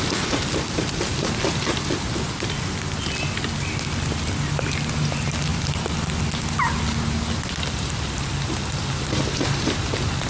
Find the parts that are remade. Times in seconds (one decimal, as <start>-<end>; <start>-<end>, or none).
none